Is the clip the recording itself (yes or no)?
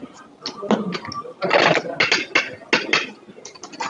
yes